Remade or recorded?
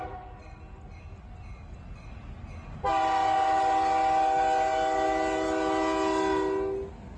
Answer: recorded